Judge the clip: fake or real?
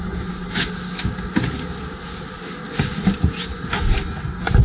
real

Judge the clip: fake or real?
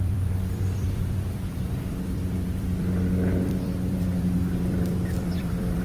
fake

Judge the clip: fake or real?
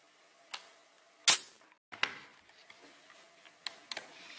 real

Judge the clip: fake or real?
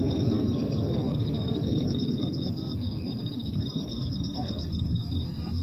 fake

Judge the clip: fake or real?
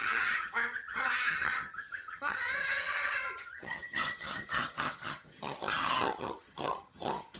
fake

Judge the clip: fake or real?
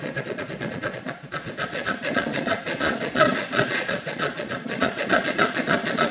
fake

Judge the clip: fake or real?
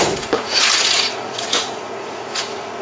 fake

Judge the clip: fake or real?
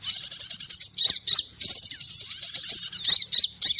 real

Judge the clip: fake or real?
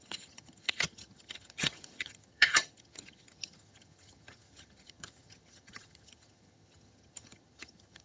fake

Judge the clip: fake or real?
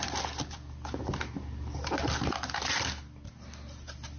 real